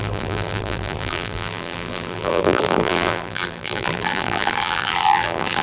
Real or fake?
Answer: fake